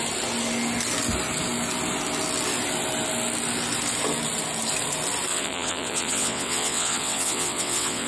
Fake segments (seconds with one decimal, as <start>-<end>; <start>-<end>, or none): 5.3-8.1